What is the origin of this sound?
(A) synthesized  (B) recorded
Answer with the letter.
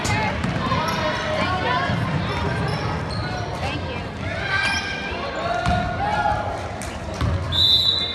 B